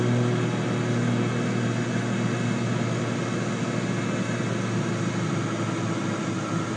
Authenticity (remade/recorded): recorded